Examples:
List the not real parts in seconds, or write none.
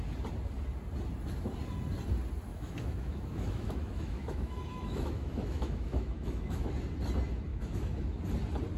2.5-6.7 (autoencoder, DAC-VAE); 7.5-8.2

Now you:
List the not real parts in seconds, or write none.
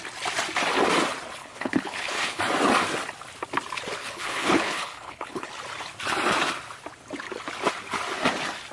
1.4-2.4 (codec, HILCodec); 4.0-5.5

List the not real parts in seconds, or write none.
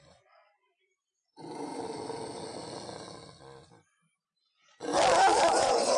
0.0-1.7 (vocoder, Vocos); 4.4-4.9; 5.5-6.0